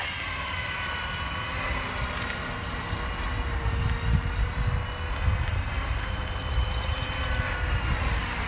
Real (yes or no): yes